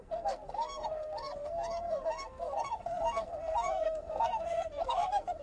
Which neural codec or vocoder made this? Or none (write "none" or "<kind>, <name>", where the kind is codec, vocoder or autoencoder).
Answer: codec, SNAC